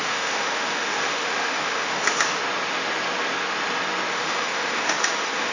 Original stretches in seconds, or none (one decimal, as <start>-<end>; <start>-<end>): 2.4-4.1

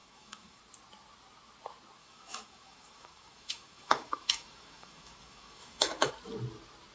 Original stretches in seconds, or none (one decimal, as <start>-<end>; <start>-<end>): 0.6-2.0; 6.1-6.9

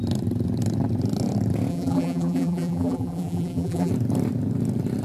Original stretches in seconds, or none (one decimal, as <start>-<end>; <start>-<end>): 0.0-1.7; 3.9-5.0

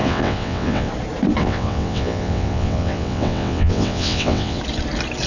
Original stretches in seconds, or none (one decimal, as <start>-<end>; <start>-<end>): 0.9-1.4; 4.6-5.3

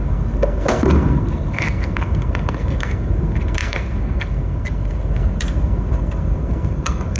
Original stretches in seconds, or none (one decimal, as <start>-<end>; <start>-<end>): none